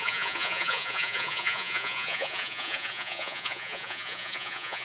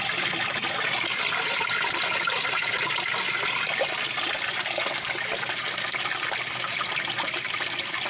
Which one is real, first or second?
second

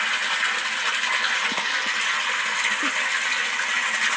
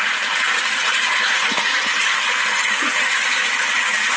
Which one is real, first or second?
first